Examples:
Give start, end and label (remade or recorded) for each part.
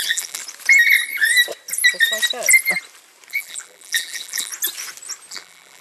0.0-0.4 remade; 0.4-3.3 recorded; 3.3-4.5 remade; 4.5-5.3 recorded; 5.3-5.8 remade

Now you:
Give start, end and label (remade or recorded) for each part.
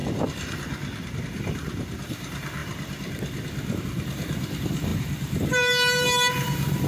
0.0-2.6 remade; 2.6-3.8 recorded; 3.8-6.9 remade